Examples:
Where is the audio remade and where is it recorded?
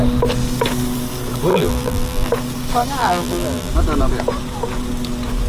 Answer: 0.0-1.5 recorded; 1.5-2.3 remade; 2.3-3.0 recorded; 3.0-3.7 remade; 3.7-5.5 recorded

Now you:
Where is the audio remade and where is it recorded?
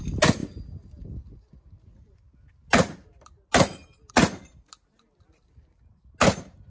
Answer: 0.0-6.7 recorded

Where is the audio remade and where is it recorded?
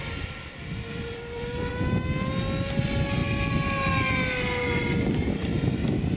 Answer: 0.0-1.7 remade; 1.7-2.8 recorded; 2.8-6.2 remade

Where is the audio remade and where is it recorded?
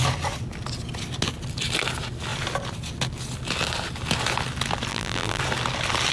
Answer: 0.0-4.9 recorded; 4.9-5.4 remade; 5.4-6.1 recorded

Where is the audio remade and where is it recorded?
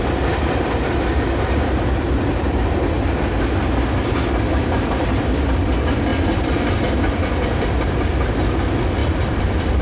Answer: 0.0-6.1 recorded; 6.1-6.8 remade; 6.8-9.0 recorded; 9.0-9.8 remade